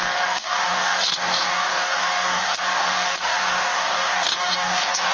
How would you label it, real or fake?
fake